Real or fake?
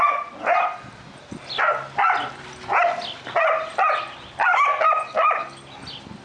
real